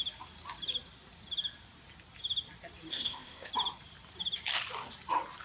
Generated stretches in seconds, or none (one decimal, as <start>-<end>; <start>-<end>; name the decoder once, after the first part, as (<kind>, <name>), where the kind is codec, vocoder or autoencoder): 2.9-3.5 (codec, ZipCodec)